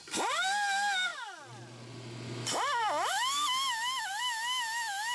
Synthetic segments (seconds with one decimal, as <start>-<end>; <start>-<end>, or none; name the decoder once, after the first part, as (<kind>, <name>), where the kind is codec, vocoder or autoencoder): none